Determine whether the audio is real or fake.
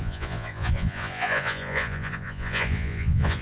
fake